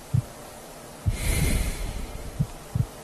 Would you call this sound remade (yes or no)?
yes